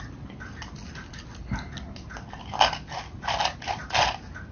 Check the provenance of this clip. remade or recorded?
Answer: recorded